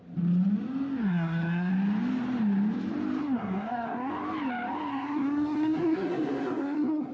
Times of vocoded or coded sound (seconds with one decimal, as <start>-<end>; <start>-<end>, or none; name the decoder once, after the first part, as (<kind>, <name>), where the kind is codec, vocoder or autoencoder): 1.0-1.7 (codec, SNAC); 3.2-4.1; 4.9-7.1